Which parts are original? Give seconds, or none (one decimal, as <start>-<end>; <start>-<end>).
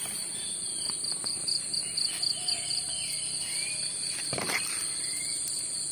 0.0-1.8; 3.5-5.9